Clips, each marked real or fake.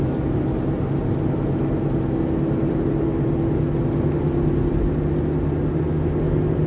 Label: real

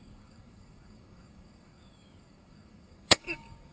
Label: fake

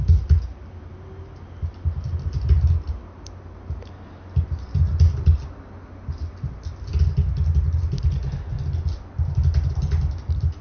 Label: real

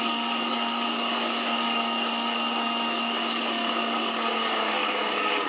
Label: fake